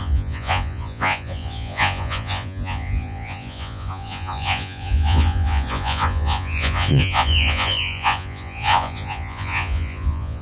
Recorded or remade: remade